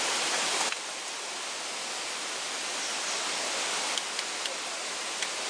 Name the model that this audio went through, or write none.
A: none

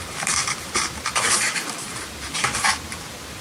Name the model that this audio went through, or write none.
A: vocoder, BigVGAN v2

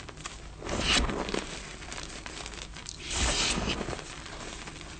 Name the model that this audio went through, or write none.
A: none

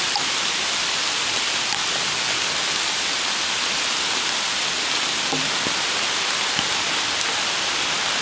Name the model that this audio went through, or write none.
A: none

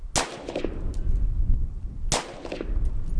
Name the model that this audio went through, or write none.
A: none